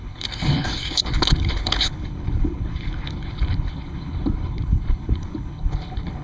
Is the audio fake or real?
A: fake